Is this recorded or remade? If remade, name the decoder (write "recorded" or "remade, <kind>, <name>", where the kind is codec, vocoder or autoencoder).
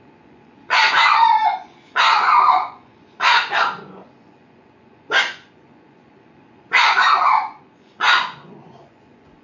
remade, vocoder, Vocos